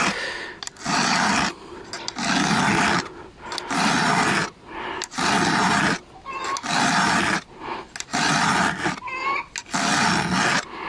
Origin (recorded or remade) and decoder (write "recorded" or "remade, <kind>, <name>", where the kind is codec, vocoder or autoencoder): recorded